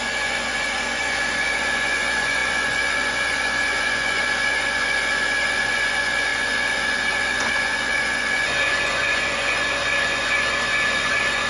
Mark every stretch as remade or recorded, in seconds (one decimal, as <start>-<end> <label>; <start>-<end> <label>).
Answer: 0.0-11.5 remade